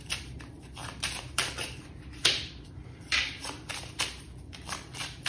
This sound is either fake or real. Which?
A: fake